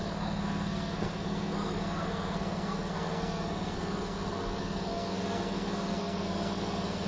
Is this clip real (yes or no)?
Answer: no